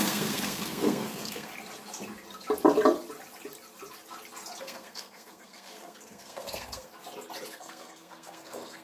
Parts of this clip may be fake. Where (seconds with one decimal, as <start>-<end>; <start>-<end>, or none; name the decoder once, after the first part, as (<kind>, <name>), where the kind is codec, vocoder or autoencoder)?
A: 0.0-1.5 (codec, SNAC); 4.6-6.9; 7.5-8.8